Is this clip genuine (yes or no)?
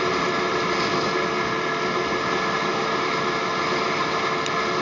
yes